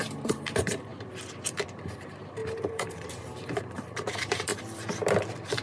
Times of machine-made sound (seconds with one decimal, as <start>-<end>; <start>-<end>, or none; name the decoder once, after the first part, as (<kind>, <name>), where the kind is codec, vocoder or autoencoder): 0.0-0.9 (vocoder, BigVGAN v2); 1.8-4.5